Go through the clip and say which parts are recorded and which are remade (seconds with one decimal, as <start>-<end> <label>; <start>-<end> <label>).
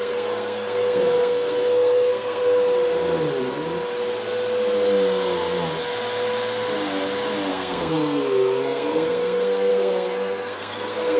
0.0-2.4 remade; 2.4-7.5 recorded; 7.5-11.2 remade